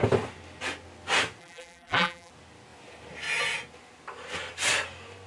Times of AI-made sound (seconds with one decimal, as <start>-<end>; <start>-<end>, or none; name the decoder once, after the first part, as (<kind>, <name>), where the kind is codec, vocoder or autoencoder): 1.4-2.3 (vocoder, BigVGAN v2)